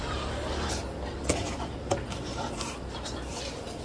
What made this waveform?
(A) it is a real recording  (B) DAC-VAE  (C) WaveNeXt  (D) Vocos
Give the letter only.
A